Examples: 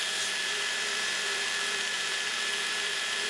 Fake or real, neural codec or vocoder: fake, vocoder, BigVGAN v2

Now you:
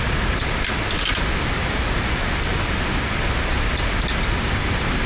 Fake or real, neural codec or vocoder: real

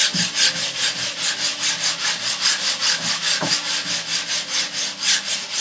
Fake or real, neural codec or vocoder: real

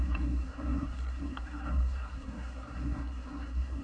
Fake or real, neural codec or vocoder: fake, codec, SNAC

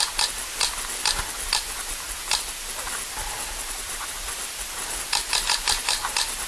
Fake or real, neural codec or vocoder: real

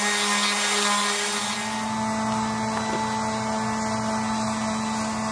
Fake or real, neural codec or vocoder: real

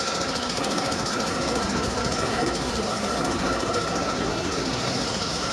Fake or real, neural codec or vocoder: fake, codec, SNAC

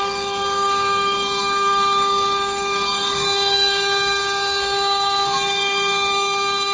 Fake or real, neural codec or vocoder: fake, codec, DAC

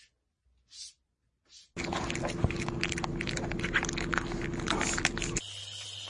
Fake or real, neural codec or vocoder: real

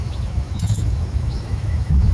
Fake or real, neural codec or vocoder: fake, autoencoder, DAC-VAE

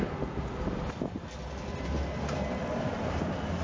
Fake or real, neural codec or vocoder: real